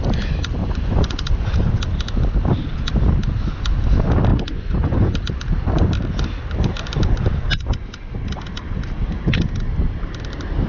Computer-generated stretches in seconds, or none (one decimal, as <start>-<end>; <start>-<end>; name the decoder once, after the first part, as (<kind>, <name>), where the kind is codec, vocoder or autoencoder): 0.6-1.7 (vocoder, Vocos); 4.3-5.1